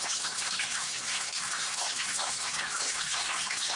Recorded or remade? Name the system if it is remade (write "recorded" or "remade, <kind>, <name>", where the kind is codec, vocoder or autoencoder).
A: remade, codec, SNAC